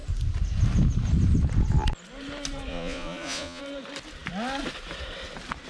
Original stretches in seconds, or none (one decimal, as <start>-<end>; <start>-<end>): 0.0-2.7; 3.6-5.7